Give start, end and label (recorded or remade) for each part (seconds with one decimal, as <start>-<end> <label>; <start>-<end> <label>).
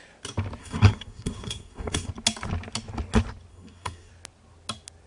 0.0-0.6 recorded; 0.6-2.1 remade; 2.1-3.5 recorded; 3.5-4.1 remade; 4.1-5.1 recorded